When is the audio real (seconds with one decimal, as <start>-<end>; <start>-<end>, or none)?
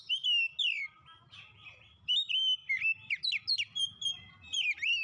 0.0-5.0